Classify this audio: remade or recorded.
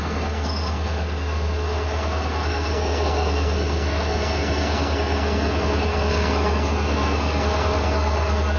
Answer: remade